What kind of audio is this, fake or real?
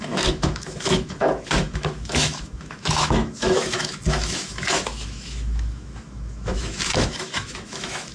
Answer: fake